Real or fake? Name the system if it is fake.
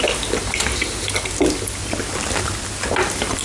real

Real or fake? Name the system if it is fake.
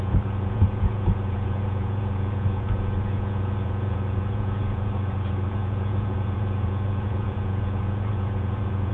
fake, vocoder, Vocos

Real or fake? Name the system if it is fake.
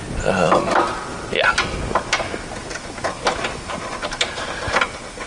real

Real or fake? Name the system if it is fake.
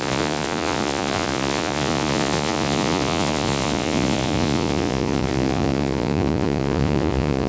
fake, vocoder, Vocos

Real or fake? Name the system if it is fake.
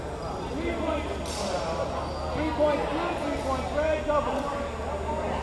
real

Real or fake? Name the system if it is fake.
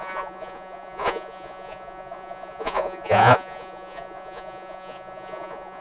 fake, vocoder, Vocos